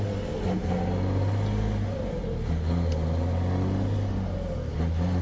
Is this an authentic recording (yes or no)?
yes